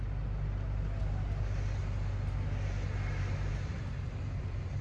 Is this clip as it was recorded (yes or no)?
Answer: yes